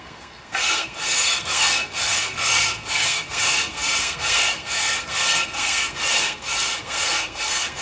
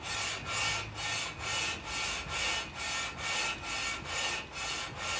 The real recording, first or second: second